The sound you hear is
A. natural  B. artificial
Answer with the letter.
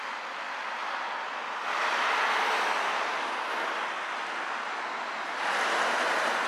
A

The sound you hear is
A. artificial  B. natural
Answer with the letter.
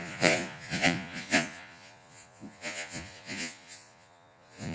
A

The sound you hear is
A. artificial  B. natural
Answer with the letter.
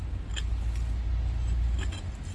B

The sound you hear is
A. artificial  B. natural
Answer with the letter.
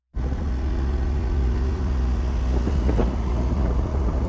A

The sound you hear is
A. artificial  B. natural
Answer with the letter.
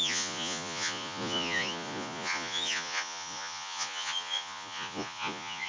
A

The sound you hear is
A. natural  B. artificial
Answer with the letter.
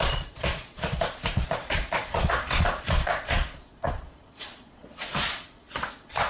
B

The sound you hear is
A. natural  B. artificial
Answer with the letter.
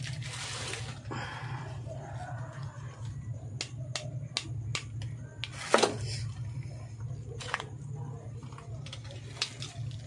A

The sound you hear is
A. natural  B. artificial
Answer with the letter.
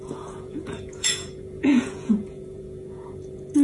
B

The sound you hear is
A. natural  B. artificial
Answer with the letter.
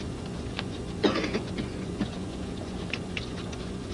B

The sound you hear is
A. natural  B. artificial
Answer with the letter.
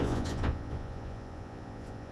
B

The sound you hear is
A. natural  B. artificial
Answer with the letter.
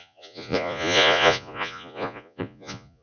B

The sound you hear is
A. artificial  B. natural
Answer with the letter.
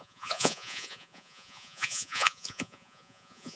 A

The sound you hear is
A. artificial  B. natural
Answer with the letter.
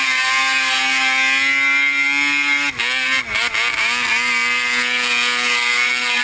B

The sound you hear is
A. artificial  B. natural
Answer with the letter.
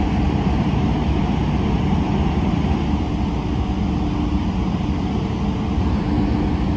B